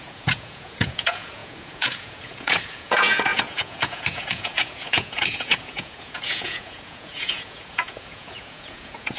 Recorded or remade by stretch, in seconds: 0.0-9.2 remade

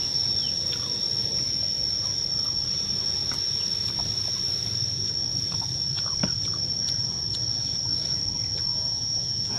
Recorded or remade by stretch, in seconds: 0.0-8.7 recorded; 8.7-9.6 remade

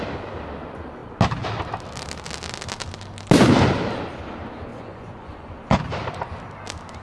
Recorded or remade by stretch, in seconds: 0.0-4.7 recorded; 4.7-5.8 remade; 5.8-7.0 recorded

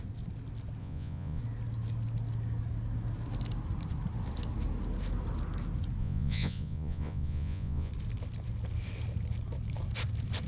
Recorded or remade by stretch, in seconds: 0.0-0.8 recorded; 0.8-1.4 remade; 1.4-6.0 recorded; 6.0-7.9 remade; 7.9-10.5 recorded

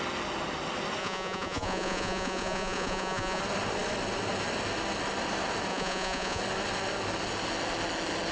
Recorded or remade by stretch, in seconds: 0.0-1.0 recorded; 1.0-3.4 remade; 3.4-5.7 recorded; 5.7-6.4 remade; 6.4-8.3 recorded

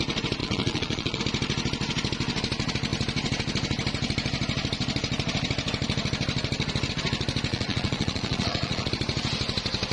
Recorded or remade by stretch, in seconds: 0.0-0.4 recorded; 0.4-1.2 remade; 1.2-7.5 recorded; 7.5-8.9 remade; 8.9-9.9 recorded

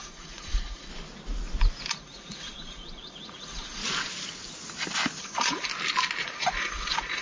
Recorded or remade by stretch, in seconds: 0.0-0.9 remade; 0.9-1.9 recorded; 1.9-3.8 remade; 3.8-5.2 recorded; 5.2-5.7 remade; 5.7-6.2 recorded; 6.2-7.2 remade